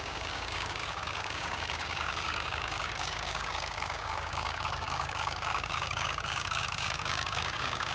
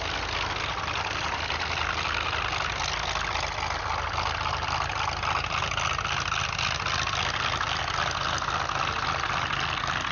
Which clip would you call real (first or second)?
second